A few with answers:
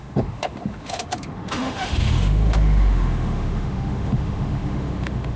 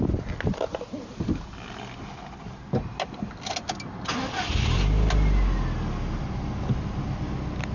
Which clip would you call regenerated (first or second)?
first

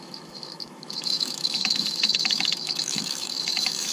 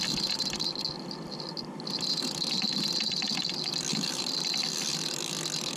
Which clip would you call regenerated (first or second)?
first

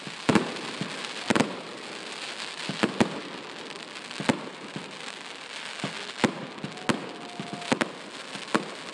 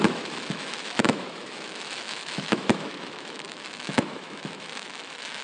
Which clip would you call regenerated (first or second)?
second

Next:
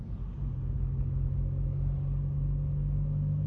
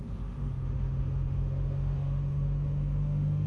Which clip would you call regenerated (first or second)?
second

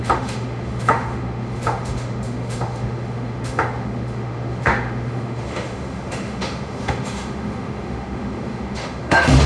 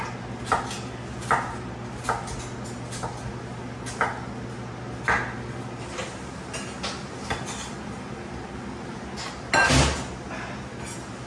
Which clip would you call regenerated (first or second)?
first